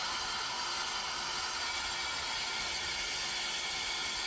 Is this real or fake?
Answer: real